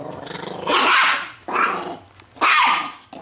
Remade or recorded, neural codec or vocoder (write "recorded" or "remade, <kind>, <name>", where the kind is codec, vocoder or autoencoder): recorded